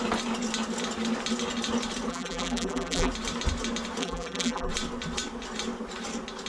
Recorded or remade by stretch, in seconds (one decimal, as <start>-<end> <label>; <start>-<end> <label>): 0.0-2.1 recorded; 2.1-3.1 remade; 3.1-4.0 recorded; 4.0-4.7 remade; 4.7-6.5 recorded